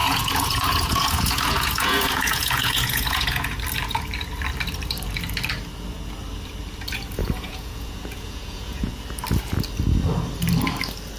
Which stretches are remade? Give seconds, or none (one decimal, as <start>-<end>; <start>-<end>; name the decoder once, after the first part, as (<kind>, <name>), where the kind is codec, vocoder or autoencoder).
0.0-3.6 (vocoder, Vocos); 7.2-8.9